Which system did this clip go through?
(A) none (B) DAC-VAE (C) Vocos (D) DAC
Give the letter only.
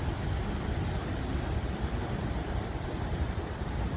A